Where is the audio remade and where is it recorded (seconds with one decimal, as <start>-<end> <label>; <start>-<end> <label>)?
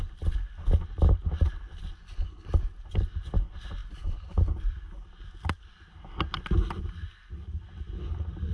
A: 0.0-8.5 recorded